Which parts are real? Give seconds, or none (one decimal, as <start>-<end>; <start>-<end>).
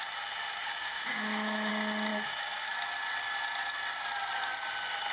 0.0-0.8; 1.7-5.1